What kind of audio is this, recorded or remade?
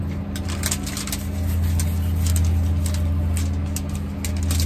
recorded